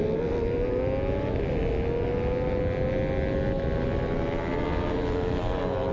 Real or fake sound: real